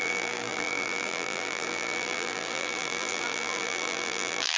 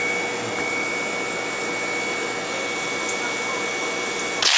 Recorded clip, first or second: second